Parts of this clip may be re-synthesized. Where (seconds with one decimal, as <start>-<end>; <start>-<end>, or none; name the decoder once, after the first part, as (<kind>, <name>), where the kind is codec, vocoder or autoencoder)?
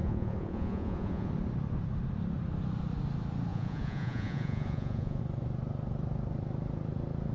0.0-1.3 (vocoder, Vocos); 3.5-5.2